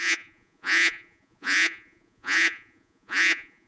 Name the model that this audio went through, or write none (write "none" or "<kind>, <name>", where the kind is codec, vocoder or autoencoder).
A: vocoder, Vocos